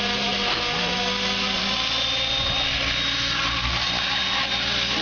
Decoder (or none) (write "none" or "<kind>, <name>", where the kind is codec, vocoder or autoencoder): none